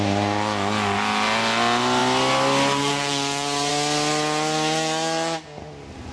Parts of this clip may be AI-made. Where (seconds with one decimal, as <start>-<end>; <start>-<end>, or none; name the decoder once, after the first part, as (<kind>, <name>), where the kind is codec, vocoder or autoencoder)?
none